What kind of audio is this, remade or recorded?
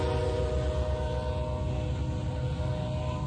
recorded